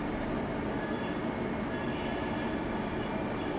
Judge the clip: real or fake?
real